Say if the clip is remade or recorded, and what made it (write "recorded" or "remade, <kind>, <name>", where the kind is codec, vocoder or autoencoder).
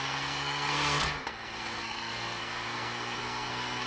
remade, codec, SNAC